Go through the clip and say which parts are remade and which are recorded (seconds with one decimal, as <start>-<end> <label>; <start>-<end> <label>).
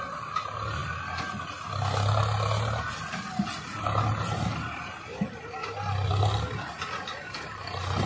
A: 0.0-8.1 recorded